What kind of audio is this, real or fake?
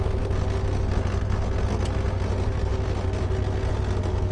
real